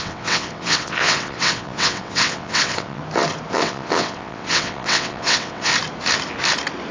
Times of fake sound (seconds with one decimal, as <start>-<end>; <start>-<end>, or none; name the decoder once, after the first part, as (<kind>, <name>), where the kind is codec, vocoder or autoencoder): 0.0-3.0 (vocoder, WaveNeXt); 3.5-5.7